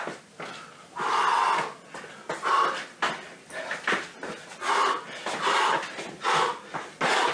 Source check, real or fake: real